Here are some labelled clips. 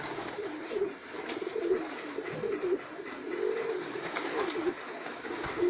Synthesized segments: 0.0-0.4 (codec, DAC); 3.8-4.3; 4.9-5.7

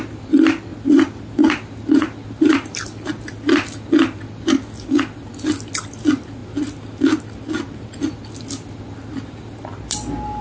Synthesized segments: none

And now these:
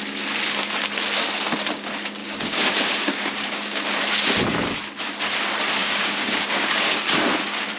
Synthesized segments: 2.2-3.8 (codec, DAC); 5.8-7.2

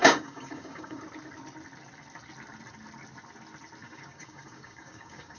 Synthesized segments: 0.0-1.0 (codec, DAC); 3.8-5.4